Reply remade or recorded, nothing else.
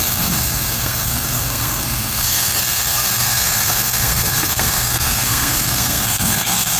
remade